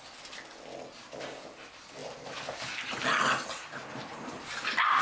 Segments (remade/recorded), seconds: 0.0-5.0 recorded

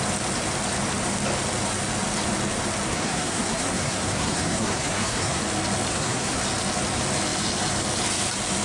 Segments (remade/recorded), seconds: 0.0-2.9 recorded; 2.9-5.4 remade; 5.4-5.9 recorded; 5.9-6.4 remade; 6.4-8.6 recorded

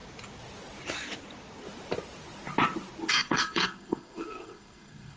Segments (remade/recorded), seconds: 0.0-3.1 recorded; 3.1-5.2 remade

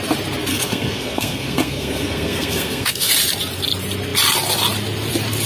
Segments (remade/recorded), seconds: 0.0-0.5 recorded; 0.5-3.1 remade; 3.1-5.5 recorded

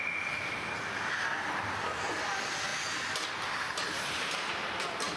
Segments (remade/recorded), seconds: 0.0-5.2 recorded